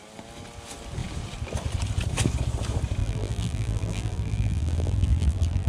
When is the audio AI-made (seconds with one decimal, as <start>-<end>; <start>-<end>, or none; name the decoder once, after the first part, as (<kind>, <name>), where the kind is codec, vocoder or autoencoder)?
3.0-5.7 (vocoder, BigVGAN v2)